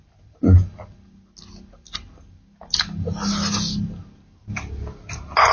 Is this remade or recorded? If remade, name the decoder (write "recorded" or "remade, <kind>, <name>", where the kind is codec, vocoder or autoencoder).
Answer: recorded